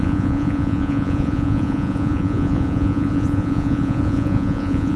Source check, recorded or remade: remade